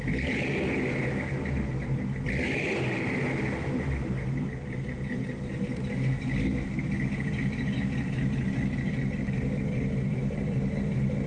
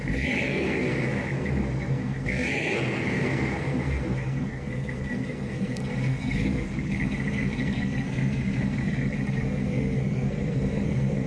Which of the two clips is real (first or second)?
first